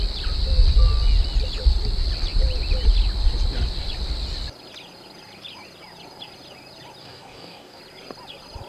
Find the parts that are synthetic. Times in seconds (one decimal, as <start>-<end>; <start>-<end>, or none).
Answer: 7.0-7.8